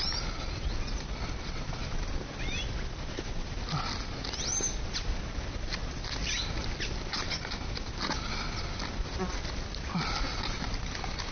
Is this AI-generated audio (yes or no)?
no